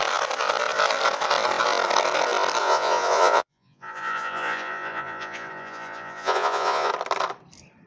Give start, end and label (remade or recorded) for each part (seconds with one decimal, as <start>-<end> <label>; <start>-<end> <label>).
0.0-2.6 recorded; 2.6-6.9 remade; 6.9-7.9 recorded